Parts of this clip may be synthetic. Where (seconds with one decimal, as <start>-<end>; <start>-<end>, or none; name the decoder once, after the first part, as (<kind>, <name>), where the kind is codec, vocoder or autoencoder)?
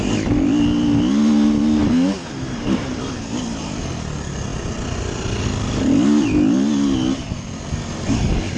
1.8-3.8 (vocoder, BigVGAN v2)